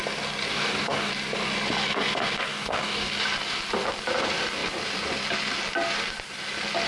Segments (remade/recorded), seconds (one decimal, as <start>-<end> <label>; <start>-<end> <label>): 0.0-0.5 recorded; 0.5-1.1 remade; 1.1-2.5 recorded; 2.5-3.1 remade; 3.1-6.9 recorded